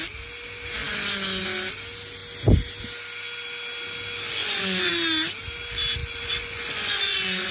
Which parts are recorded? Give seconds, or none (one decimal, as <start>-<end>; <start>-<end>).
0.0-4.4; 4.9-6.0